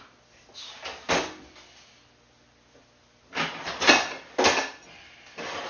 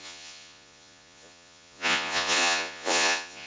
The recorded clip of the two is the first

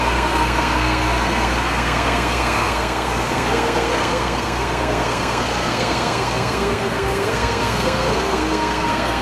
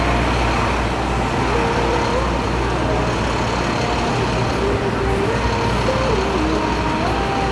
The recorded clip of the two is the second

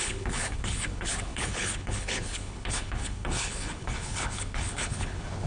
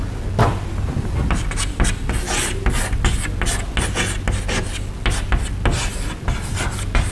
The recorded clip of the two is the second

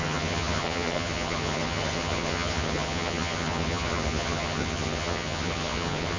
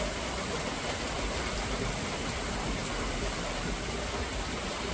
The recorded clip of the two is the second